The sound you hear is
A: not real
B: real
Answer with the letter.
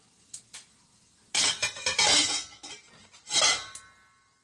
B